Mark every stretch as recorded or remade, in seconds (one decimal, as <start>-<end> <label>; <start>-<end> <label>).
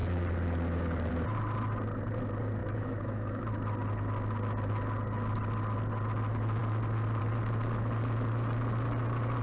0.0-2.6 recorded; 2.6-3.4 remade; 3.4-9.4 recorded